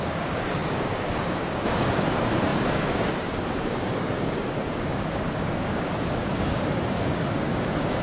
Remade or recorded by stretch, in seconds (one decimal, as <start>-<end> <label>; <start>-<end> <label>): 0.0-8.0 remade